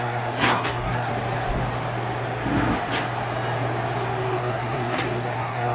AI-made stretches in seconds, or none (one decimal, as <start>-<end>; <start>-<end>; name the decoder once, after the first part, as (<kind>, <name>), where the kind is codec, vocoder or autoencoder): 0.0-1.1 (codec, SNAC); 4.4-5.7